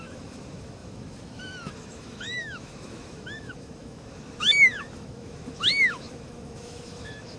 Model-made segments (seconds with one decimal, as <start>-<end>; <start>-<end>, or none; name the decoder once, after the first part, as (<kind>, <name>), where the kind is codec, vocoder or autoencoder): 0.0-7.4 (autoencoder, DAC-VAE)